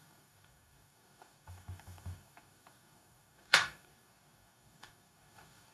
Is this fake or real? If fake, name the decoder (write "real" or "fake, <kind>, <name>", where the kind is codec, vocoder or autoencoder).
fake, codec, DAC